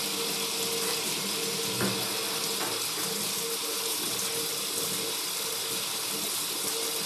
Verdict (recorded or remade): recorded